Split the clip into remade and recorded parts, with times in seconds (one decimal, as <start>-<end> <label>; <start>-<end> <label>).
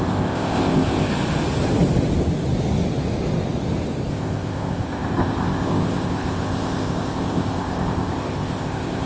0.0-1.1 remade; 1.1-4.1 recorded; 4.1-9.1 remade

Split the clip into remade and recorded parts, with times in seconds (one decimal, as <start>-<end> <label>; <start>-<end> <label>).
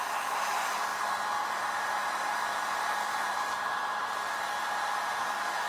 0.0-5.2 recorded; 5.2-5.7 remade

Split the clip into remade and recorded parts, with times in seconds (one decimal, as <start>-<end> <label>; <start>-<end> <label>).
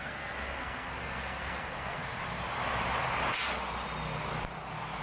0.0-2.0 remade; 2.0-5.0 recorded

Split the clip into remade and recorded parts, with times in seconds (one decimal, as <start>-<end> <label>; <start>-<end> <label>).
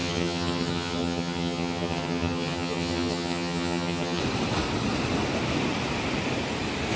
0.0-4.2 remade; 4.2-7.0 recorded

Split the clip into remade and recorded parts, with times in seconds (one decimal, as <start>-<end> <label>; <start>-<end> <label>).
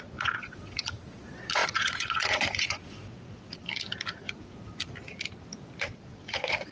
0.0-3.6 remade; 3.6-5.8 recorded; 5.8-6.7 remade